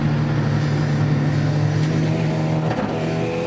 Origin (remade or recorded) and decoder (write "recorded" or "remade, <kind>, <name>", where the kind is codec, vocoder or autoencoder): recorded